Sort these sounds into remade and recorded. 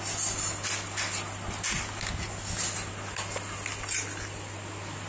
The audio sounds recorded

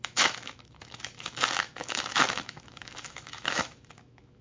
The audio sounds remade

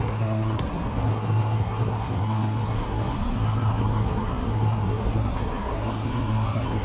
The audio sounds remade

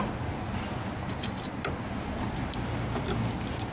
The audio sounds recorded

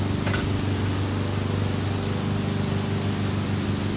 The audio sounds recorded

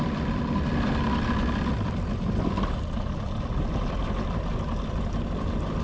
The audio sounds recorded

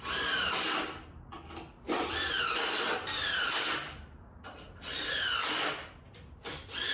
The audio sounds recorded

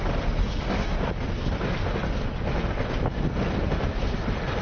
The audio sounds recorded